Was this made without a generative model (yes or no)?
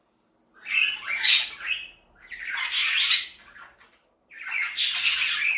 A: yes